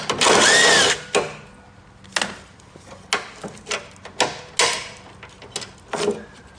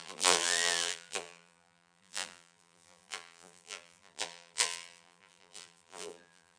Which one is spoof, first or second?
second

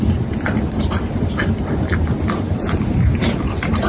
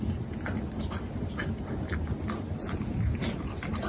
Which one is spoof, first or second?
first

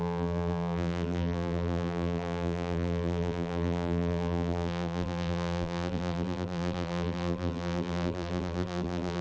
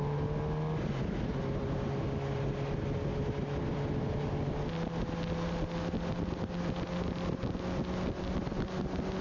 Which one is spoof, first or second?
first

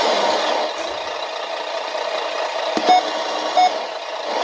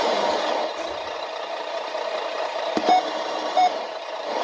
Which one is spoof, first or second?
second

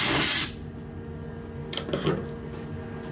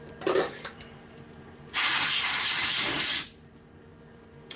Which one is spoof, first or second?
second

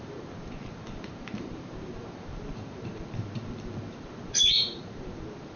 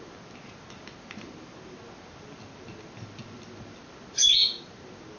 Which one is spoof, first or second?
first